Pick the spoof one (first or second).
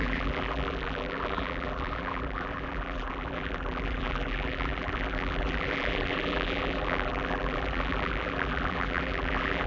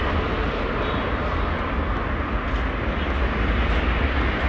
first